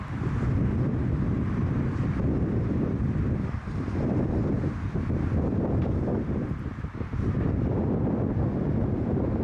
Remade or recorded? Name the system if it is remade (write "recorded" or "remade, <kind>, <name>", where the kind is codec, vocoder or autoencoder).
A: remade, vocoder, BigVGAN v2